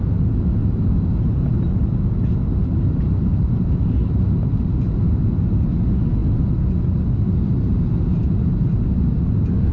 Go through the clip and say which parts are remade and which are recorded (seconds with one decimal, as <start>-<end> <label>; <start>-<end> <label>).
0.0-0.6 recorded; 0.6-4.5 remade; 4.5-9.7 recorded